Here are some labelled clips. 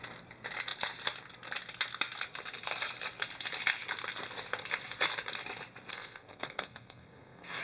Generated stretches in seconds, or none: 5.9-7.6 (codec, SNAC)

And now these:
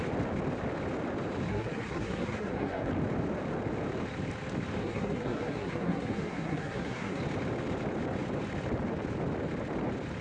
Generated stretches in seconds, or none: 1.5-2.9 (codec, SNAC); 4.8-7.2

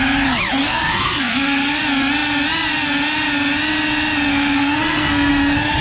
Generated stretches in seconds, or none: 0.6-1.8 (codec, SNAC); 4.3-5.3